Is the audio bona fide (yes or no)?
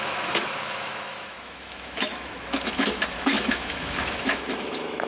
no